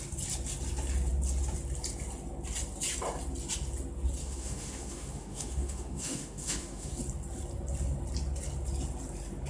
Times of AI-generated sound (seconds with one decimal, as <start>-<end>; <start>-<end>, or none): 4.2-6.9